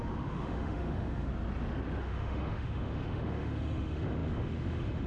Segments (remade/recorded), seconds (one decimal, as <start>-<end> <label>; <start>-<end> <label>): 0.0-1.3 remade; 1.3-2.0 recorded; 2.0-5.1 remade